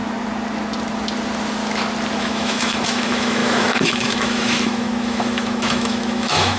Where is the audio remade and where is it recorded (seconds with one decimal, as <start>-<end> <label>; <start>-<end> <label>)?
0.0-2.2 recorded; 2.2-6.6 remade